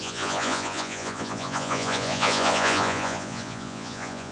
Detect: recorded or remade remade